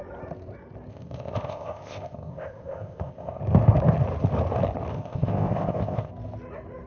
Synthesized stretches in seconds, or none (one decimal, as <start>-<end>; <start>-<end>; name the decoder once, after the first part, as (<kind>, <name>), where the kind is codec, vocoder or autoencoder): 0.9-3.4 (codec, ZipCodec); 4.9-6.1